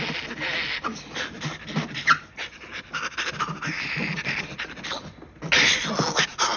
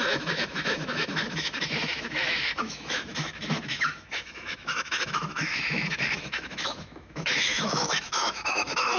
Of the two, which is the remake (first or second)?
second